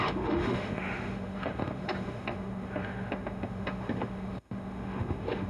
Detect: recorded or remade remade